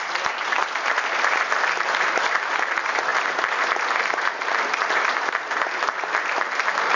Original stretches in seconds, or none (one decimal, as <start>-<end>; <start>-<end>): 0.0-7.0